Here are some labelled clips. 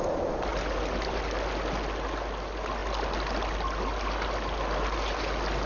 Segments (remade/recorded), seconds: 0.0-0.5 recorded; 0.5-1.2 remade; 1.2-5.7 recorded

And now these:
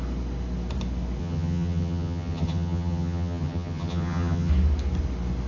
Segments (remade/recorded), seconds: 0.0-1.2 recorded; 1.2-4.5 remade; 4.5-5.5 recorded